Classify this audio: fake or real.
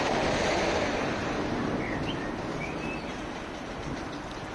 real